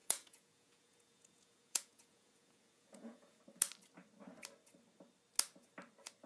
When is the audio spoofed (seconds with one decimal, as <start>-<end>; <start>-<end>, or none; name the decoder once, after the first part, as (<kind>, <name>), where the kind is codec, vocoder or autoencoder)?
0.0-3.4 (vocoder, Vocos)